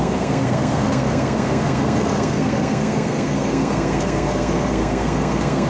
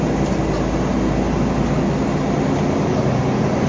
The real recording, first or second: second